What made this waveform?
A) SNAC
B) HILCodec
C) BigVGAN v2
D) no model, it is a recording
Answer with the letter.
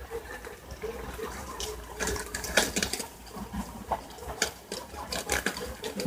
C